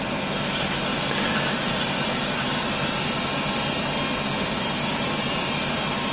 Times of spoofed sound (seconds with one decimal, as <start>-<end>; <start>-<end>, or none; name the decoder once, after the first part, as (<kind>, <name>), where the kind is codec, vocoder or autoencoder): 0.0-0.9 (vocoder, BigVGAN v2); 4.6-6.1